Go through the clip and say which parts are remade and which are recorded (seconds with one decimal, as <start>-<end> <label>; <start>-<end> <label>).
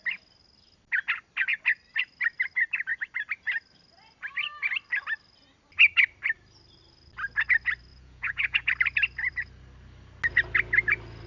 0.0-7.9 recorded; 7.9-8.7 remade; 8.7-11.3 recorded